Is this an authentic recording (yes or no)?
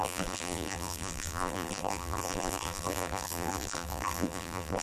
no